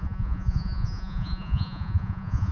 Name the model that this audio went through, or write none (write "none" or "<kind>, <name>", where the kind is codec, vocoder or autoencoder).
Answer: vocoder, Vocos